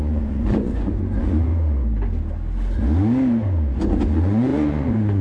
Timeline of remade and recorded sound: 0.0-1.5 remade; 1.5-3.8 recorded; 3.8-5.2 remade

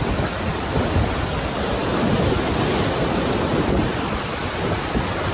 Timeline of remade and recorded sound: 0.0-5.3 recorded

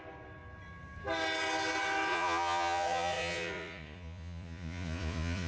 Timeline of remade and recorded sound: 0.0-2.1 recorded; 2.1-5.5 remade

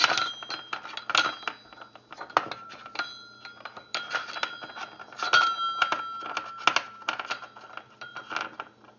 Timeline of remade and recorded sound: 0.0-9.0 recorded

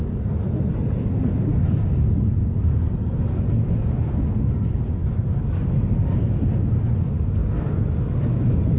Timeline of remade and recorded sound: 0.0-8.8 recorded

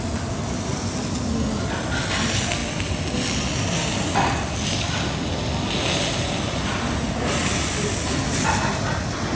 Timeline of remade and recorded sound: 0.0-9.4 recorded

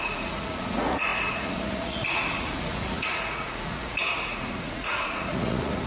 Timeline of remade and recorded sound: 0.0-5.9 remade